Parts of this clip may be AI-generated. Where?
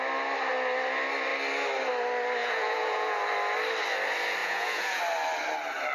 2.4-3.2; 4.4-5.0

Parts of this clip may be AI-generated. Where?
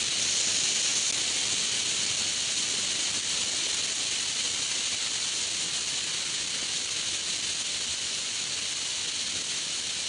7.9-8.4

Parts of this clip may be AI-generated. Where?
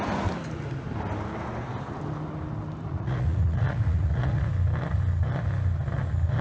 2.9-4.5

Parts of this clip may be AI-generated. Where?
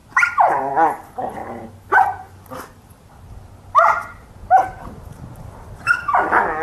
none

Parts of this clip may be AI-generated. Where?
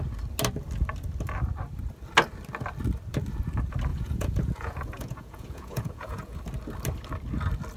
3.9-6.4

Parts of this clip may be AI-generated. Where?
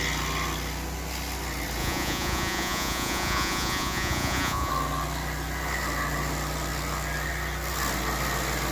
1.8-4.7